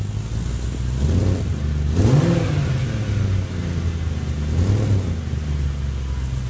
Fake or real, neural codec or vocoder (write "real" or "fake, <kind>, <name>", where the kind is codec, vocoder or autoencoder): real